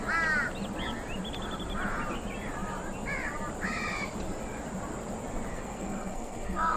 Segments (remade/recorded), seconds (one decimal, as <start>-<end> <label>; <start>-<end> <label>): 0.0-5.5 recorded; 5.5-6.8 remade